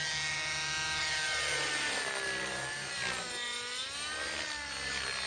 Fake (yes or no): no